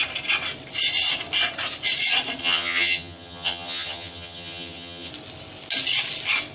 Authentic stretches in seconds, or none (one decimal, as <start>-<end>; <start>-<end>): 0.0-2.4; 5.1-6.5